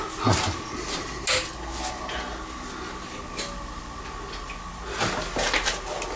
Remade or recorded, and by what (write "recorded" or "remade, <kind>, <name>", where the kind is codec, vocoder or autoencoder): recorded